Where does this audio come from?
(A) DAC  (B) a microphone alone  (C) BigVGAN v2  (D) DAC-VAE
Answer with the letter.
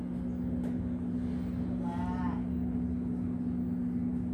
B